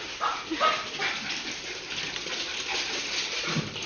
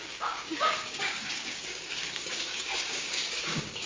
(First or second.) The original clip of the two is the first